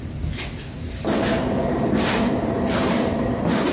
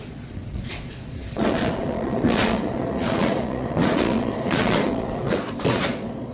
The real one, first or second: first